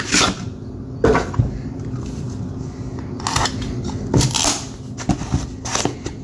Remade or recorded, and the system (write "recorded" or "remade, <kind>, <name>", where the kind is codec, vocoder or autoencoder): recorded